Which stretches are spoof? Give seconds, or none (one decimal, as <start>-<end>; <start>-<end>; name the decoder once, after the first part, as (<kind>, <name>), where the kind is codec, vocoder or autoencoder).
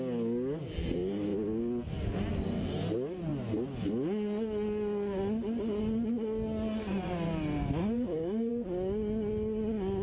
7.6-8.5 (autoencoder, DAC-VAE)